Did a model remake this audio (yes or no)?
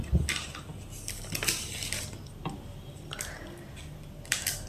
no